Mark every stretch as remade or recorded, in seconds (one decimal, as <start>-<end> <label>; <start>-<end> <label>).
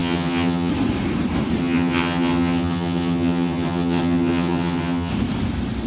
0.0-0.7 remade; 0.7-1.6 recorded; 1.6-5.1 remade; 5.1-5.9 recorded